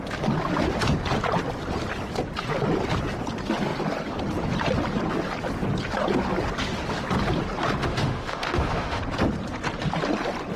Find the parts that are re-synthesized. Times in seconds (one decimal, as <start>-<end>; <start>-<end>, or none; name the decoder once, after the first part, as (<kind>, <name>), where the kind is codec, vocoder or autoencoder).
7.8-9.0 (autoencoder, DAC-VAE)